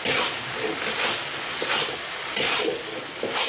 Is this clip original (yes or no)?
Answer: yes